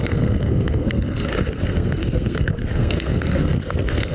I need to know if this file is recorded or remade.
remade